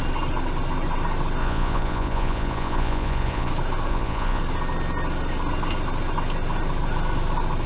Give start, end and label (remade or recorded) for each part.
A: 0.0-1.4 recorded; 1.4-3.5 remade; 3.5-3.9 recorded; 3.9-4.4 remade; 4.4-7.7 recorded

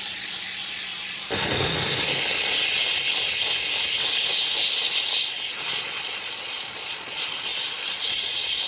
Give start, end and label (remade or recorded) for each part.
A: 0.0-1.2 remade; 1.2-5.7 recorded; 5.7-8.7 remade

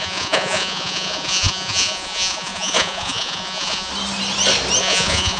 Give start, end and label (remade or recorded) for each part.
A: 0.0-3.9 remade; 3.9-4.8 recorded; 4.8-5.4 remade

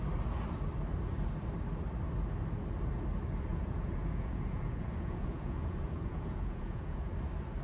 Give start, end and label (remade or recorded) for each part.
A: 0.0-3.5 recorded; 3.5-7.1 remade; 7.1-7.6 recorded

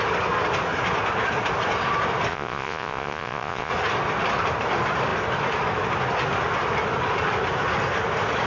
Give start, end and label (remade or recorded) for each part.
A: 0.0-2.3 recorded; 2.3-3.7 remade; 3.7-8.5 recorded

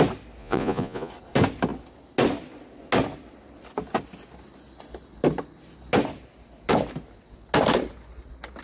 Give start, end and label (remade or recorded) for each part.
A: 0.0-0.4 recorded; 0.4-1.1 remade; 1.1-8.6 recorded

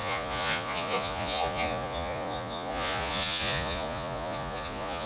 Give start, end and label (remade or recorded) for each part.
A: 0.0-5.1 remade

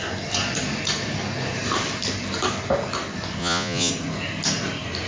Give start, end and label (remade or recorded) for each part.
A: 0.0-3.4 recorded; 3.4-3.9 remade; 3.9-5.1 recorded